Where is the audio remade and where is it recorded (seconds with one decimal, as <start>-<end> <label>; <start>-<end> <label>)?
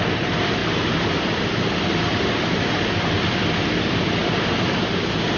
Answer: 0.0-5.4 recorded